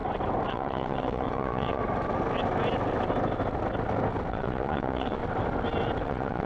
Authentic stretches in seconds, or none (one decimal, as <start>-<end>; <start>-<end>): 0.0-0.5; 1.8-4.3; 5.2-6.0